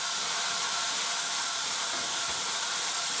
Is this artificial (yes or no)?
yes